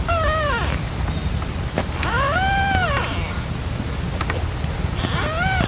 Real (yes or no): yes